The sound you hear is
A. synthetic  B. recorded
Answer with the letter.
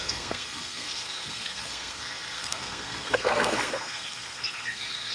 A